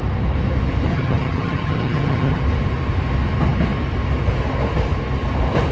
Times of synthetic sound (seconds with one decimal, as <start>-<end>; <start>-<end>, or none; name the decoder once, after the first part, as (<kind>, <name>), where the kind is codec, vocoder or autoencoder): 0.9-2.4 (vocoder, HiFi-GAN)